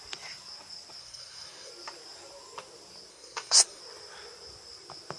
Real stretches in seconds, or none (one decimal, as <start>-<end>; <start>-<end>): 0.0-1.0; 1.7-3.1; 3.8-5.2